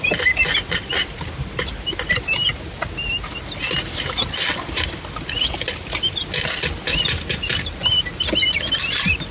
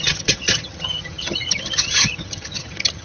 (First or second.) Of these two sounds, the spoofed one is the second